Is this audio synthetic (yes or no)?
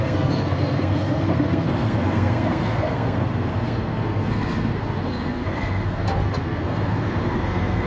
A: yes